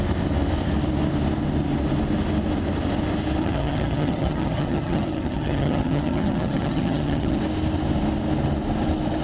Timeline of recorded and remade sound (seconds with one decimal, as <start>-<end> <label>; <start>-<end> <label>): 0.0-3.4 recorded; 3.4-7.4 remade; 7.4-9.2 recorded